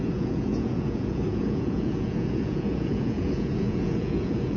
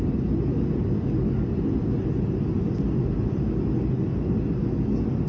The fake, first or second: first